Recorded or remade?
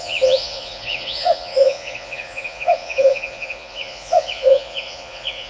remade